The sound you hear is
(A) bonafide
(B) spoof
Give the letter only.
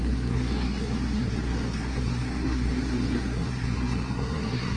B